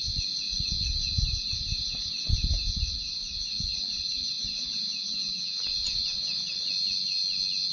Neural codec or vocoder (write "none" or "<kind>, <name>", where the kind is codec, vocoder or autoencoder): none